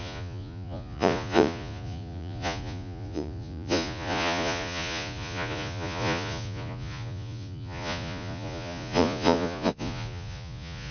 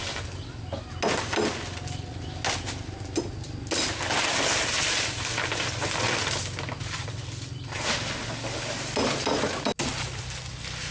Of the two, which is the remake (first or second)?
first